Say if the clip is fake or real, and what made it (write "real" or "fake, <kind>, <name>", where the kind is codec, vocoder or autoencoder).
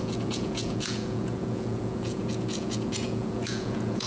fake, vocoder, Vocos